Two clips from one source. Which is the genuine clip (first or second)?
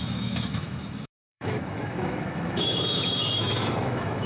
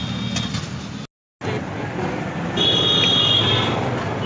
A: second